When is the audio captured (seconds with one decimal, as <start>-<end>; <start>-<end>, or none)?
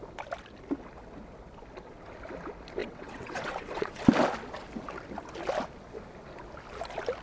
0.0-2.8; 4.0-7.2